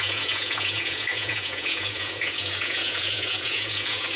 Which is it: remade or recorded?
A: remade